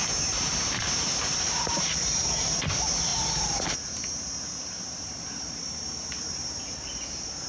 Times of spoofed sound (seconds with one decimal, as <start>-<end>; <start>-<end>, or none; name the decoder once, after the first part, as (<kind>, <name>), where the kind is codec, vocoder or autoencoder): 0.0-7.5 (vocoder, BigVGAN v2)